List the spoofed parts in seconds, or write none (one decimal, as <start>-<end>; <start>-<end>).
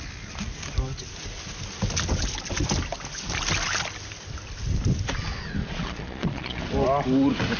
5.6-6.6